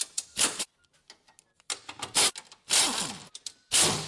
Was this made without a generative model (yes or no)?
yes